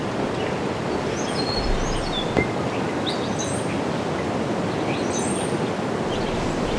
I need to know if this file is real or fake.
real